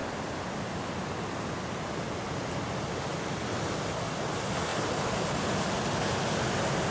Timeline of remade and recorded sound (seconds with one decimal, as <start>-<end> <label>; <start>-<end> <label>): 0.0-1.0 remade; 1.0-3.1 recorded; 3.1-3.7 remade; 3.7-6.9 recorded